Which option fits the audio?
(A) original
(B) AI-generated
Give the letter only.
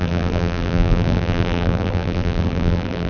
B